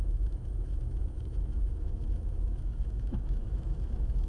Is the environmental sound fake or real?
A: fake